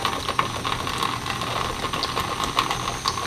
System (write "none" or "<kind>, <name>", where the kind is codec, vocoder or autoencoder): none